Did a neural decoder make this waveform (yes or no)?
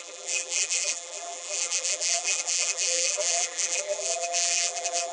yes